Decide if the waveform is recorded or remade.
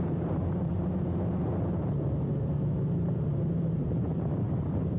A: remade